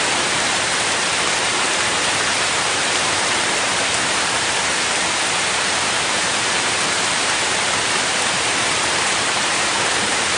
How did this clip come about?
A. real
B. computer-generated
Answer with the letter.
B